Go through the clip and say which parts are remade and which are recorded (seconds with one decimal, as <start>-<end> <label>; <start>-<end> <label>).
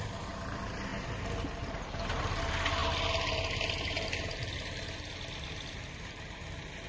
0.0-6.9 recorded